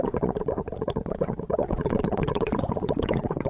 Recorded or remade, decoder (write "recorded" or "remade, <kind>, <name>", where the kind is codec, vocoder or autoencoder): remade, vocoder, Vocos